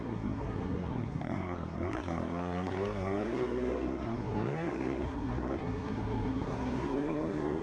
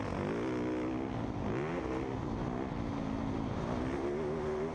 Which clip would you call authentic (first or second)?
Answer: second